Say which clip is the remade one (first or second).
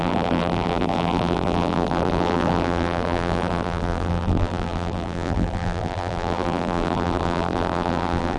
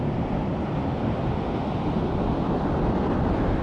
first